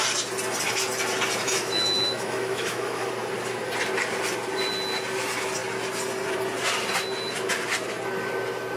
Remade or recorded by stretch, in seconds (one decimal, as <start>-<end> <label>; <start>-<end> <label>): 0.0-1.4 recorded; 1.4-3.1 remade; 3.1-8.8 recorded